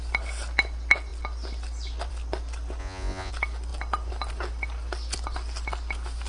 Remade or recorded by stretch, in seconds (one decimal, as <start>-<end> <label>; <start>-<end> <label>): 0.0-2.8 recorded; 2.8-3.3 remade; 3.3-6.3 recorded